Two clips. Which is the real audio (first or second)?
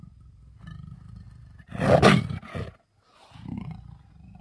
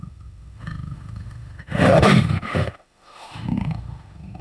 first